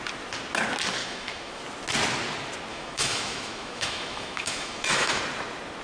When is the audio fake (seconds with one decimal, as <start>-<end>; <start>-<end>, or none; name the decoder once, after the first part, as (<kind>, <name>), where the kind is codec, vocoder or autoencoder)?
1.0-1.6 (autoencoder, DAC-VAE); 2.7-5.2